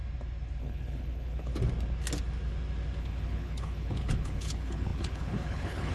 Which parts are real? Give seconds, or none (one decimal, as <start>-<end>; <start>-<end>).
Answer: 0.0-0.6; 1.5-3.0